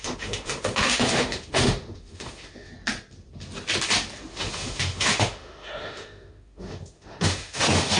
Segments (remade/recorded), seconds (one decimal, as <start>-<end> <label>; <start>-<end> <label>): 0.0-2.7 remade; 2.7-4.3 recorded; 4.3-8.0 remade